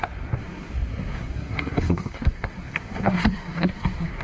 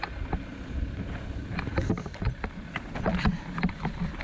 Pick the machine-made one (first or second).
first